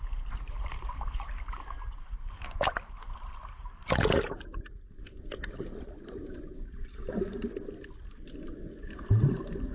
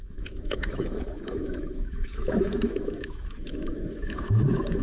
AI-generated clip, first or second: second